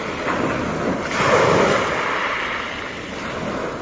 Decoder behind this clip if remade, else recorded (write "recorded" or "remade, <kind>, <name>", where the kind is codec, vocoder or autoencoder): recorded